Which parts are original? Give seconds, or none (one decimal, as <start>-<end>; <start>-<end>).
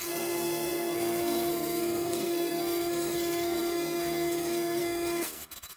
none